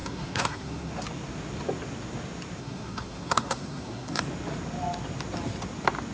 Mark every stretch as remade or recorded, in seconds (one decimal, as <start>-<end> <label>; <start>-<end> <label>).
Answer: 0.0-0.9 remade; 0.9-2.6 recorded; 2.6-4.2 remade; 4.2-6.1 recorded